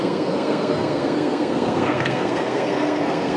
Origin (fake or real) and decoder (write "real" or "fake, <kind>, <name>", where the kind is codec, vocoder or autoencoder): fake, codec, SNAC